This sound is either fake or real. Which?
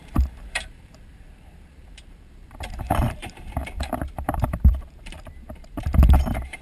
fake